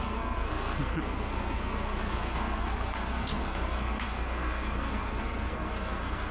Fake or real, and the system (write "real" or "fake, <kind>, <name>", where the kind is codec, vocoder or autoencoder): fake, codec, SNAC